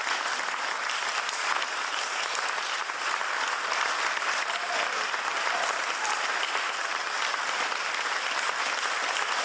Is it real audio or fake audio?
real